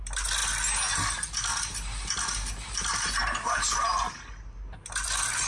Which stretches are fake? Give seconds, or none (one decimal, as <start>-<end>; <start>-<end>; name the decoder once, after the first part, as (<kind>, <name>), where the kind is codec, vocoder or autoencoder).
none